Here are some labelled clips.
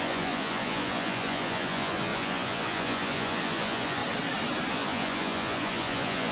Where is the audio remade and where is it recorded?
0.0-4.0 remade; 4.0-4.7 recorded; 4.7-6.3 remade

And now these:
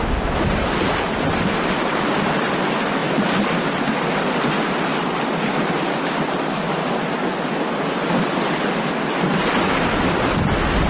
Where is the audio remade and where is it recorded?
0.0-10.9 recorded